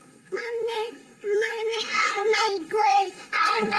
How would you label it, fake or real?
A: fake